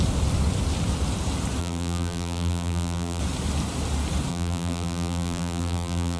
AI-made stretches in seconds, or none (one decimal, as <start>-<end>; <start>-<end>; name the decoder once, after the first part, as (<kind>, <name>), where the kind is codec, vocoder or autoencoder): 1.6-3.2 (vocoder, BigVGAN v2); 4.3-6.2